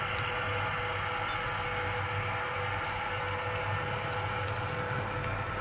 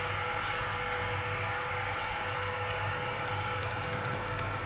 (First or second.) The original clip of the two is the first